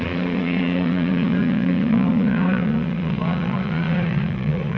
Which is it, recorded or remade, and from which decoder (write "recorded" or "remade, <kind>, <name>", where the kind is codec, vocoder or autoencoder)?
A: remade, vocoder, Vocos